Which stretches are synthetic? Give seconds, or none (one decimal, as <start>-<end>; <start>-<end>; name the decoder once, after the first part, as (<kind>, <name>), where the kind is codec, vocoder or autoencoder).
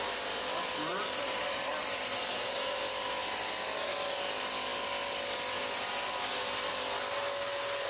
0.9-2.8 (vocoder, BigVGAN v2)